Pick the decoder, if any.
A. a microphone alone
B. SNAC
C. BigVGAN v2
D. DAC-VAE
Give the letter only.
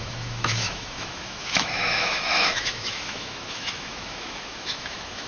D